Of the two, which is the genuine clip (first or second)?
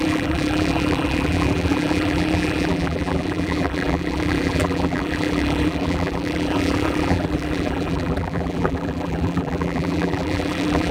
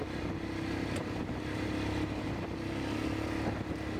second